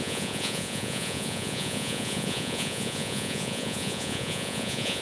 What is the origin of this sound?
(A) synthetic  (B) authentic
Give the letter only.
A